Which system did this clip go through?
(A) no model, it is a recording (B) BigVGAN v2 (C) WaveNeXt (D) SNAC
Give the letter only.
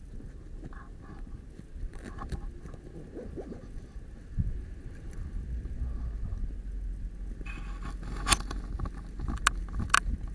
A